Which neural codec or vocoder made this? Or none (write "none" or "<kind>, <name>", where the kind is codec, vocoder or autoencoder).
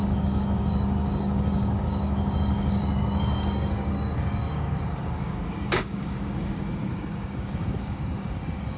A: codec, DAC